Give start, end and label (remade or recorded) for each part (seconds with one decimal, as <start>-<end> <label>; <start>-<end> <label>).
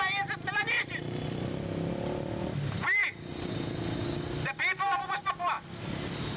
0.0-6.4 recorded